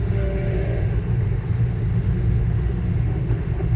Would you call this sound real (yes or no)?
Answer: no